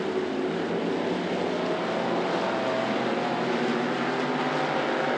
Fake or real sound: real